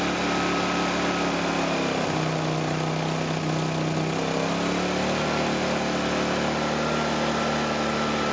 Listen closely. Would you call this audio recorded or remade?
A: recorded